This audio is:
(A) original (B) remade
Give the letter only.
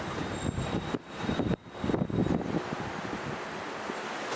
A